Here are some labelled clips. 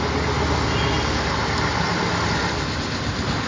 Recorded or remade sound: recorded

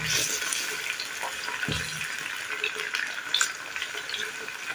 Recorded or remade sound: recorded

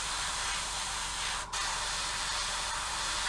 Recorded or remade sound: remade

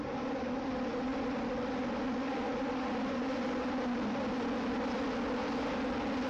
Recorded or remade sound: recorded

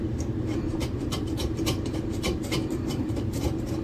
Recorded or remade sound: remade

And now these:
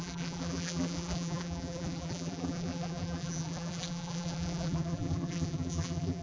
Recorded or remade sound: remade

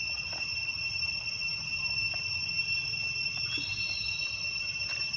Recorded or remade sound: recorded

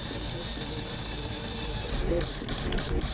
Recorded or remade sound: remade